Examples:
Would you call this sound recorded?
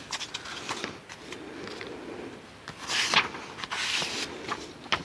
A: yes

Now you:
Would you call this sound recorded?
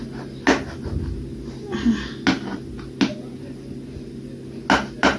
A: yes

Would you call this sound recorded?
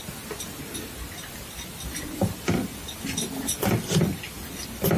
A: yes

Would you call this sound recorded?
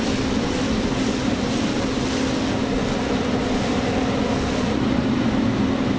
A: yes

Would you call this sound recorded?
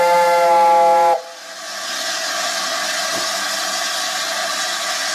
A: yes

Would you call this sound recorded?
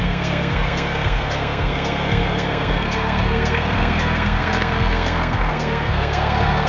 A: no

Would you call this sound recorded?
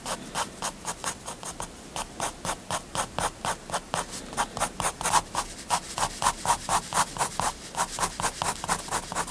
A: yes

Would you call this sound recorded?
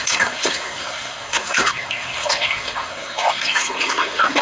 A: no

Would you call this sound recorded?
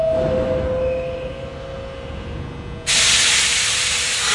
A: yes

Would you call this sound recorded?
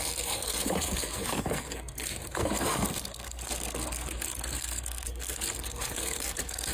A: no